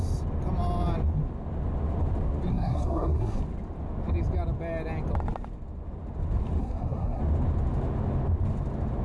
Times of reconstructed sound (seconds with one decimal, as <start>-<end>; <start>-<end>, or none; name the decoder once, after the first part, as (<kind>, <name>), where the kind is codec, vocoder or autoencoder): 2.5-3.4 (codec, SNAC); 6.6-7.2